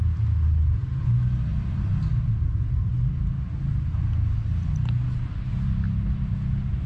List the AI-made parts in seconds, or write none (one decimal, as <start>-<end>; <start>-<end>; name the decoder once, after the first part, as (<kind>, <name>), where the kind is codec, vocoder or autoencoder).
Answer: none